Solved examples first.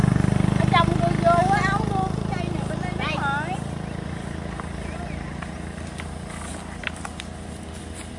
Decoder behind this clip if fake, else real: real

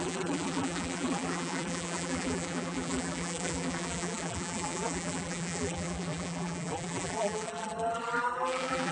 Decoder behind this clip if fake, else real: fake, vocoder, BigVGAN v2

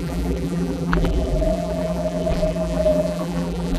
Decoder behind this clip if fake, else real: fake, vocoder, BigVGAN v2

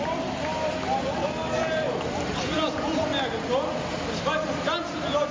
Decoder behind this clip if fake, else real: real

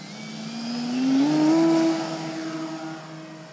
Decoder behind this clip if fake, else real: real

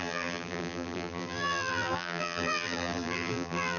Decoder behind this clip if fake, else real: fake, vocoder, BigVGAN v2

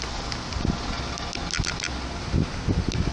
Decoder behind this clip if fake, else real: real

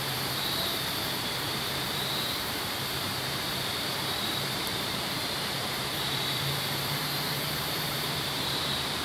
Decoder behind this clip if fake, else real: fake, vocoder, BigVGAN v2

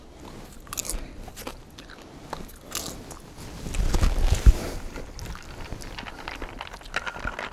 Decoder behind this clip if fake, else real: real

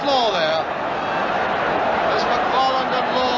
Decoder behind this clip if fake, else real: real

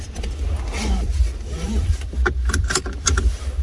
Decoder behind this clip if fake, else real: fake, vocoder, BigVGAN v2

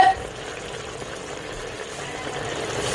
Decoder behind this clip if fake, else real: real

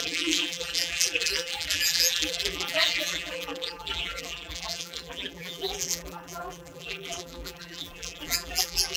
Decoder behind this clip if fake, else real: fake, vocoder, BigVGAN v2